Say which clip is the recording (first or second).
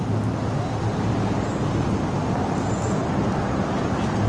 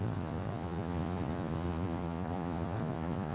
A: first